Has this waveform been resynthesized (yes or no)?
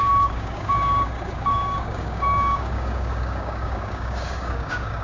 yes